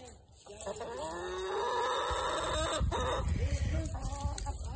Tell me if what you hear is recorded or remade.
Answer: recorded